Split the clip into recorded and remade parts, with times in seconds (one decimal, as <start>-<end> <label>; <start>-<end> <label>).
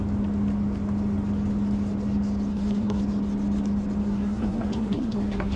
0.0-2.5 recorded; 2.5-3.0 remade; 3.0-4.0 recorded; 4.0-5.6 remade